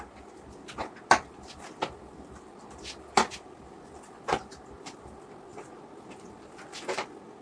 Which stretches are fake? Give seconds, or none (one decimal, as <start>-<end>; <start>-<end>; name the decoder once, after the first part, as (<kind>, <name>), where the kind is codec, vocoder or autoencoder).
none